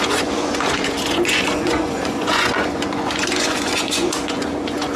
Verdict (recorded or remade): remade